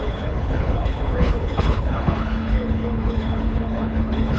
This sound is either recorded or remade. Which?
remade